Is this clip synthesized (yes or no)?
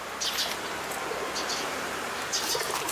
no